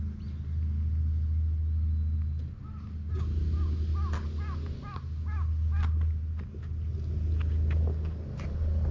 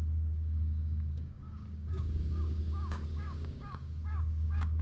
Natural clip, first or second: first